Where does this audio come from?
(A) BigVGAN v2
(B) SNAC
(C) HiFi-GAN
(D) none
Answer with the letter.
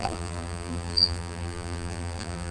A